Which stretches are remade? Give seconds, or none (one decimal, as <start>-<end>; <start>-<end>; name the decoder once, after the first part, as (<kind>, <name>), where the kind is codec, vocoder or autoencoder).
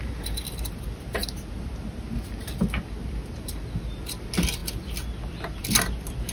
none